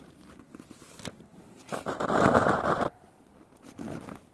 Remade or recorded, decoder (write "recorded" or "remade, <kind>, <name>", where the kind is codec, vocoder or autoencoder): remade, vocoder, BigVGAN v2